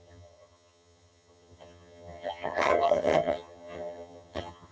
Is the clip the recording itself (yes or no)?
no